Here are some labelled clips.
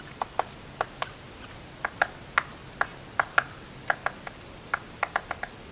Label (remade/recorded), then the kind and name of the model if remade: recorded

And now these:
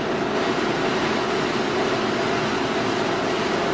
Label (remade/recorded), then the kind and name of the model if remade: recorded